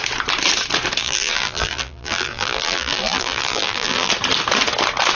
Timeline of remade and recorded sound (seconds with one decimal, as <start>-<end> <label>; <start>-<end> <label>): 0.0-1.0 recorded; 1.0-4.1 remade; 4.1-5.2 recorded